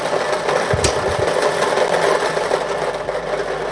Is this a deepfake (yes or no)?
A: no